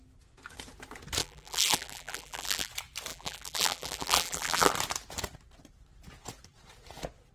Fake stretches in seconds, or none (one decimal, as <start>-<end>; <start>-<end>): 1.2-2.7; 3.1-4.7